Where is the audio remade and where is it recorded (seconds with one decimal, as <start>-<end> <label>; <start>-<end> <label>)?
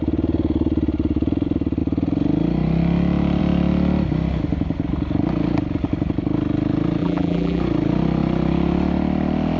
0.0-7.0 recorded; 7.0-7.6 remade; 7.6-9.6 recorded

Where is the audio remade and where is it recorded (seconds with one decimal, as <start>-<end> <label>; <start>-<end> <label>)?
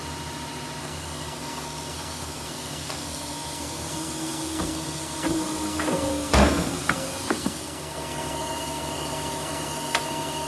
0.0-0.8 recorded; 0.8-10.5 remade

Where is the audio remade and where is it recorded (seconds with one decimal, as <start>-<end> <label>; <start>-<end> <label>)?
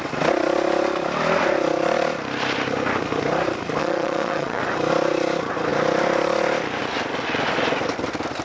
0.0-3.8 recorded; 3.8-4.6 remade; 4.6-8.4 recorded